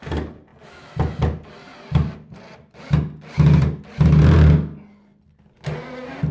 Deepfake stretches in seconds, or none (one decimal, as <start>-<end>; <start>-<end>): none